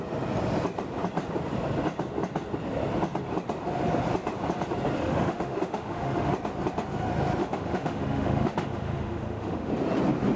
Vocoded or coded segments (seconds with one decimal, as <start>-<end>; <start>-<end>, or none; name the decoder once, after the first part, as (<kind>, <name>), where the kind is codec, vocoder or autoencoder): 5.0-6.3 (autoencoder, DAC-VAE); 7.4-9.7